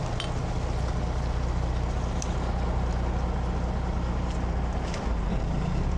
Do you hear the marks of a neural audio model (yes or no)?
no